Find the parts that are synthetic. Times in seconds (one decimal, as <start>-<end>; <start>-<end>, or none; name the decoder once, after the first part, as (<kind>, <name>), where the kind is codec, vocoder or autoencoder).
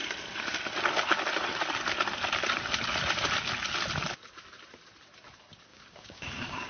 5.7-6.7 (codec, DAC)